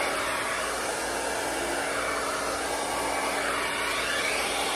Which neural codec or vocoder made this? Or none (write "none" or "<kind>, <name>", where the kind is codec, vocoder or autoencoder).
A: none